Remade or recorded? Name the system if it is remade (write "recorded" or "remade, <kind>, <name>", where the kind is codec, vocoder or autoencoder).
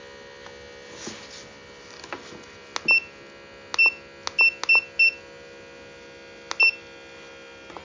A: recorded